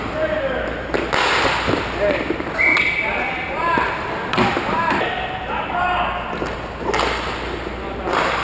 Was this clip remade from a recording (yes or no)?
no